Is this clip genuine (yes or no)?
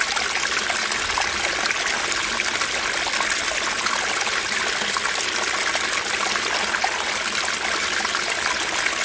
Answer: yes